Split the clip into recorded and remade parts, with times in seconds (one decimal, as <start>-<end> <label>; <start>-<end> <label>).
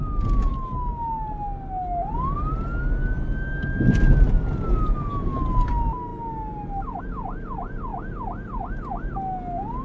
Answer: 0.0-9.8 recorded